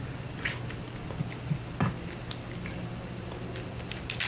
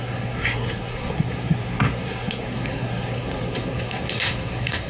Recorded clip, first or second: first